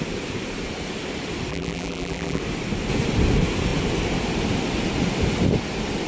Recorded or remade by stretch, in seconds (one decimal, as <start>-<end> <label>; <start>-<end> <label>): 0.0-1.5 recorded; 1.5-2.4 remade; 2.4-6.1 recorded